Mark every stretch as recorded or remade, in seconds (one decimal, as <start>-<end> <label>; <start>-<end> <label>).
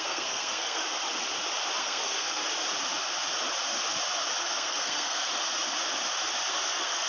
0.0-0.8 remade; 0.8-1.8 recorded; 1.8-2.4 remade; 2.4-4.4 recorded; 4.4-5.3 remade; 5.3-6.5 recorded; 6.5-7.1 remade